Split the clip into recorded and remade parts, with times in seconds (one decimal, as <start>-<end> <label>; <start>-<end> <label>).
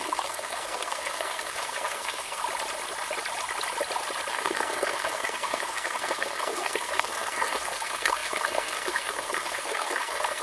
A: 0.0-2.4 remade; 2.4-4.3 recorded; 4.3-10.4 remade